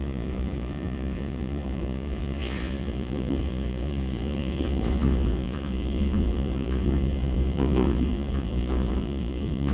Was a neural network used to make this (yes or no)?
yes